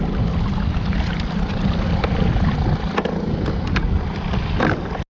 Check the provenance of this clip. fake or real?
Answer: real